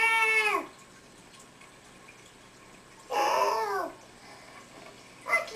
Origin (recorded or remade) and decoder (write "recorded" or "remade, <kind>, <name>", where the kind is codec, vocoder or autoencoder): recorded